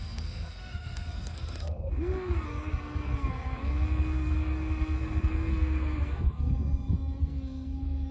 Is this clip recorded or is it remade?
remade